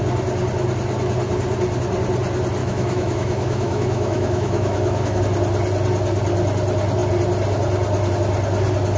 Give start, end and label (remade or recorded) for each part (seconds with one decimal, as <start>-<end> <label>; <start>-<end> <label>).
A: 0.0-2.6 recorded; 2.6-5.2 remade; 5.2-9.0 recorded

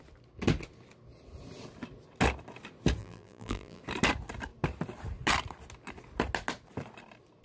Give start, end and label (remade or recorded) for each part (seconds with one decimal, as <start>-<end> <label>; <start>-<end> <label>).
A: 0.0-3.0 recorded; 3.0-3.8 remade; 3.8-7.4 recorded

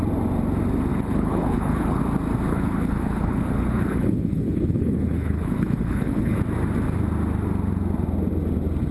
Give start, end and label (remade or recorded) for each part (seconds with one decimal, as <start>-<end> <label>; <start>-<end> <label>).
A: 0.0-0.9 recorded; 0.9-2.0 remade; 2.0-2.5 recorded; 2.5-6.4 remade; 6.4-8.9 recorded

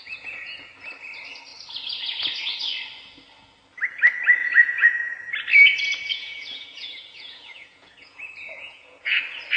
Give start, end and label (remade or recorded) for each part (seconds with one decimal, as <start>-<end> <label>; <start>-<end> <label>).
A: 0.0-0.7 remade; 0.7-4.4 recorded; 4.4-5.0 remade; 5.0-6.1 recorded; 6.1-9.2 remade; 9.2-9.6 recorded